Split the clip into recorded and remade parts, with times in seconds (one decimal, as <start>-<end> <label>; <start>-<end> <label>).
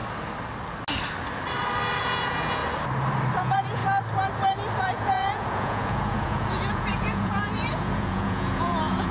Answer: 0.0-2.0 recorded; 2.0-2.6 remade; 2.6-3.4 recorded; 3.4-3.8 remade; 3.8-4.8 recorded; 4.8-9.1 remade